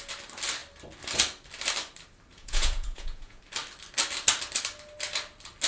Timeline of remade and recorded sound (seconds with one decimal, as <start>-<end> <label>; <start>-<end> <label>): 0.0-2.3 recorded; 2.3-3.4 remade; 3.4-5.7 recorded